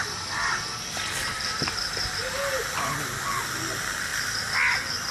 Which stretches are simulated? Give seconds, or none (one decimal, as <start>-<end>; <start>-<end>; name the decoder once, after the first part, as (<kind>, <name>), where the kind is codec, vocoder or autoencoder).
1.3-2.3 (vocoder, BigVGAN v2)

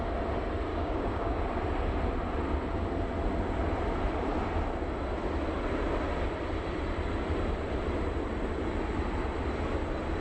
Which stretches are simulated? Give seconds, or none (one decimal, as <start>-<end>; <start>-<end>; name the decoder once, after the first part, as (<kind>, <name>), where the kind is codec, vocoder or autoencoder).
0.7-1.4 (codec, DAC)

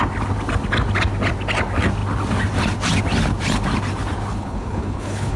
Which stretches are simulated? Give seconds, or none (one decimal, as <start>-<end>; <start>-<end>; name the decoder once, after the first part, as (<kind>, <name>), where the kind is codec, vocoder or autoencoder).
4.3-5.4 (codec, HILCodec)

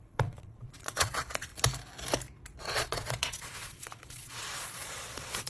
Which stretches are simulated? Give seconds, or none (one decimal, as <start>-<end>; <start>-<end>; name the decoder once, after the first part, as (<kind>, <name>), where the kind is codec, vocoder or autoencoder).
0.0-1.5 (vocoder, Vocos); 2.6-5.5

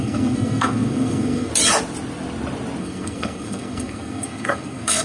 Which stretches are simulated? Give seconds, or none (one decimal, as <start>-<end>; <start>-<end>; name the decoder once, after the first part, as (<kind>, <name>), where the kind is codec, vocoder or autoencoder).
0.0-1.5 (codec, SNAC); 2.8-5.0

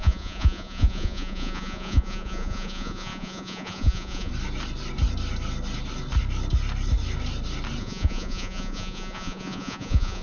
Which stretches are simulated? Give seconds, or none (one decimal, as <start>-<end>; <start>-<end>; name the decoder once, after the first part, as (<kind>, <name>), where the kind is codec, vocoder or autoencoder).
0.0-4.3 (vocoder, Vocos); 7.8-10.2

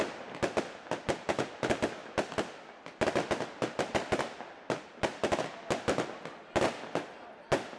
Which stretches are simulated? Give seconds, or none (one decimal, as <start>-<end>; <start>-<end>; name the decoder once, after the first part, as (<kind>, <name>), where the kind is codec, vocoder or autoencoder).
none